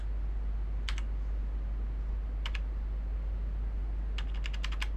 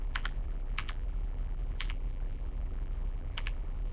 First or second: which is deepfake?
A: second